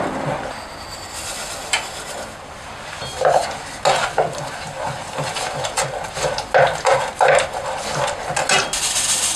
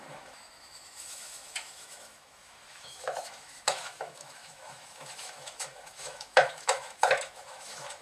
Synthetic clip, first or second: second